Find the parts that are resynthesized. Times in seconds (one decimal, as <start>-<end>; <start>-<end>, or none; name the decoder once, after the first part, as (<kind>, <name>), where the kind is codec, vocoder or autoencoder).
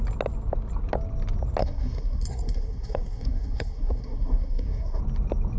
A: 1.6-5.0 (codec, SNAC)